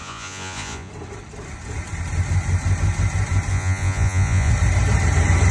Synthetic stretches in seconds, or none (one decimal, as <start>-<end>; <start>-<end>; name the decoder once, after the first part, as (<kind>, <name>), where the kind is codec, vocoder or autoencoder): 0.0-0.9 (vocoder, Vocos); 3.5-4.5